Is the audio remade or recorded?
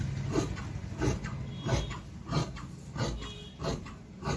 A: recorded